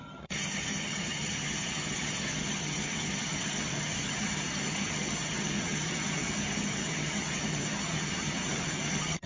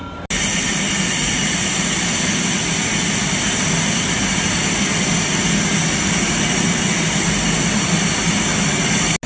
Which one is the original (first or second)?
second